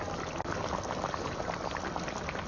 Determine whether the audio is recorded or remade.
recorded